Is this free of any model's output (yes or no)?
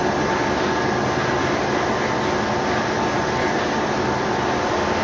yes